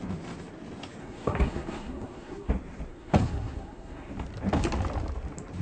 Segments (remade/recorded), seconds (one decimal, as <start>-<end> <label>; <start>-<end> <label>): 0.0-1.0 recorded; 1.0-2.5 remade; 2.5-2.9 recorded; 2.9-4.1 remade; 4.1-5.6 recorded